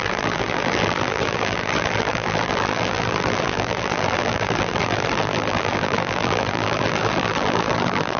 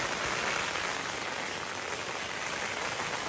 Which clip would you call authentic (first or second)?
second